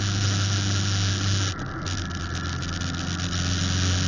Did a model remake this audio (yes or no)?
no